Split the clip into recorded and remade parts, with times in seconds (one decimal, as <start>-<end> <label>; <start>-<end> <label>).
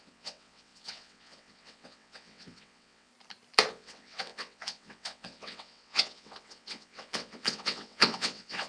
0.0-3.1 remade; 3.1-3.7 recorded; 3.7-8.7 remade